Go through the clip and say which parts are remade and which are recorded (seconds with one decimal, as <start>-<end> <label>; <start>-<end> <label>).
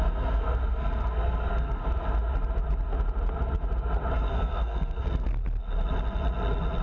0.0-1.8 remade; 1.8-4.3 recorded; 4.3-5.3 remade; 5.3-6.8 recorded